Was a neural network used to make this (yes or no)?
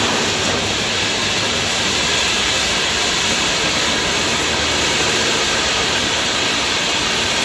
yes